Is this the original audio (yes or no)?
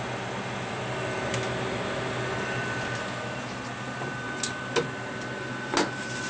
yes